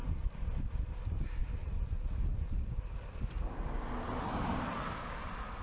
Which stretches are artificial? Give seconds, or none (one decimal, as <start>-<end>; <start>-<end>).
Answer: none